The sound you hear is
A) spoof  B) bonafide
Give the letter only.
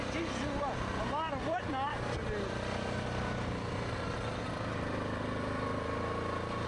B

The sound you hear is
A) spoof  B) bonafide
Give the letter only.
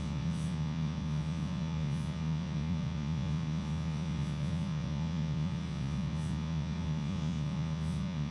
A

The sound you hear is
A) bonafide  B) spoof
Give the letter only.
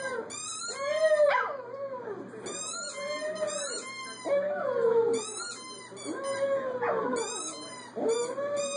A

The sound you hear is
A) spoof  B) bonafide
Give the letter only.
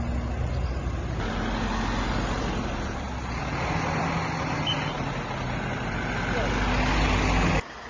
B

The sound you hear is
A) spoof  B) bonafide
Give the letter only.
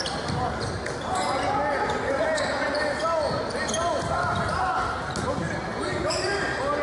B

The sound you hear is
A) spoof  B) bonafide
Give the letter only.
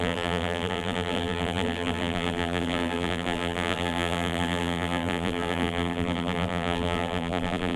A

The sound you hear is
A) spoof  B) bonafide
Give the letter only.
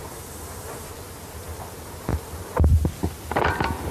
B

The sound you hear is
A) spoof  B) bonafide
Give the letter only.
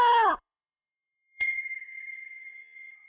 A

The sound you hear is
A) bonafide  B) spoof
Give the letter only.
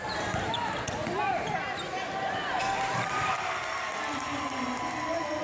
A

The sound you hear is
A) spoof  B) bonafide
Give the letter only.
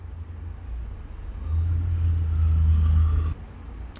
B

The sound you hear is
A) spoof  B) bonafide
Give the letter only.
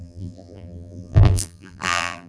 A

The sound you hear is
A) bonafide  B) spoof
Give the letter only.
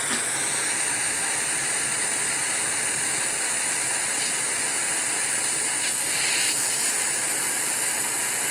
A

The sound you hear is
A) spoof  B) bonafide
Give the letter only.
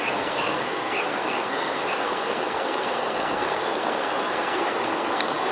A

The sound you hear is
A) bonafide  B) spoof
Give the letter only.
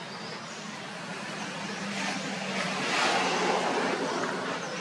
A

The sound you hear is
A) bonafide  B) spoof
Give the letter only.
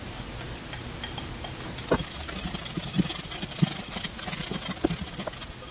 A